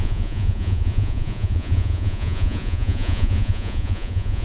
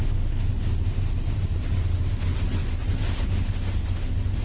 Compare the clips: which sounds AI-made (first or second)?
first